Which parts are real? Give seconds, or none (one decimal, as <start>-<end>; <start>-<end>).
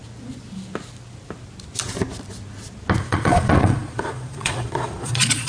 0.0-3.0